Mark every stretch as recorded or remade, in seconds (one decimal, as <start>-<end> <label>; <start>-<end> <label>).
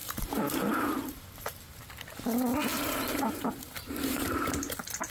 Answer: 0.0-1.8 remade; 1.8-2.7 recorded; 2.7-3.9 remade; 3.9-5.1 recorded